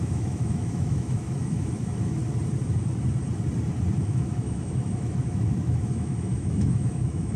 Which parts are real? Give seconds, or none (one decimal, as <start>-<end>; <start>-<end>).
2.2-4.0

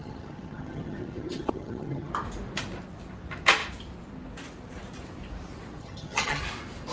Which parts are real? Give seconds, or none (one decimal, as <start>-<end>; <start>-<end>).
2.1-5.8; 6.4-6.9

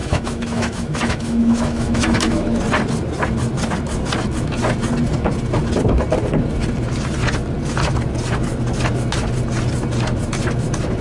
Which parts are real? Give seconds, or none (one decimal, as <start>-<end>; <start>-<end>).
2.6-11.0

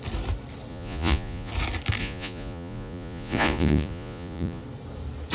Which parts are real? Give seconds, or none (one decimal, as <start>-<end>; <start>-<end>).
0.0-0.7; 1.5-2.0; 4.6-5.3

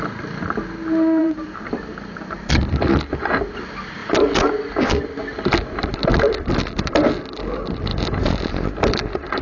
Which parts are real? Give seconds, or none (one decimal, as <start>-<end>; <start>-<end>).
0.0-1.2; 2.5-4.0; 5.2-7.9